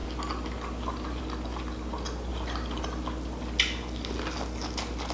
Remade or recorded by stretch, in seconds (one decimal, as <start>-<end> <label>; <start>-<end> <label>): 0.0-5.1 recorded